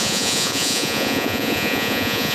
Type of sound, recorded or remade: remade